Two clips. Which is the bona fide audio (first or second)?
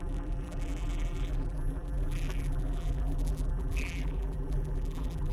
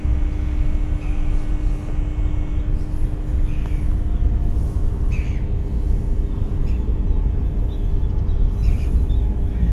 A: second